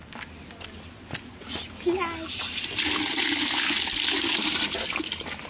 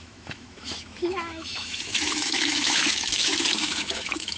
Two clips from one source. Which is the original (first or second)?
first